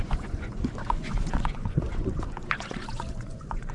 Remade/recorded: remade